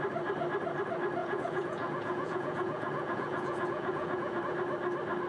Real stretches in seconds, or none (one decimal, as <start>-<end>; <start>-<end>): 0.0-1.2; 4.4-5.3